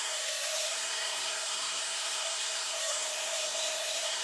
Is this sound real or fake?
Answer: fake